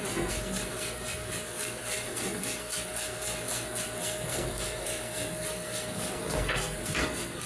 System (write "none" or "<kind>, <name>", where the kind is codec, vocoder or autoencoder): codec, SNAC